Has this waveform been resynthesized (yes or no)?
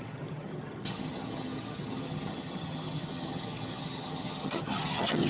yes